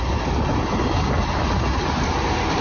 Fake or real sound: real